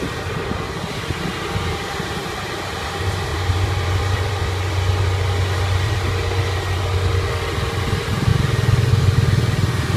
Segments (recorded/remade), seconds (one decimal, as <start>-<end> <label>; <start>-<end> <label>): 0.0-4.4 remade; 4.4-7.7 recorded; 7.7-8.3 remade; 8.3-10.0 recorded